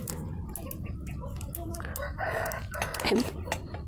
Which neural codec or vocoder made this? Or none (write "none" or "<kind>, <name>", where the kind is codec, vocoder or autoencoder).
none